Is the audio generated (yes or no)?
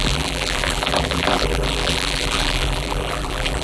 yes